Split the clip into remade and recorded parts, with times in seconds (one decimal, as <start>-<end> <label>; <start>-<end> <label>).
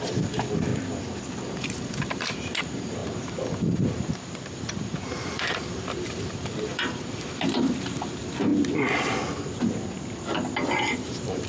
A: 0.0-0.7 remade; 0.7-1.6 recorded; 1.6-8.5 remade; 8.5-10.9 recorded; 10.9-11.5 remade